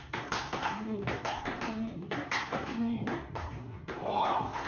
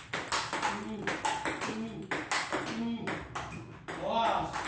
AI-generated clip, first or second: first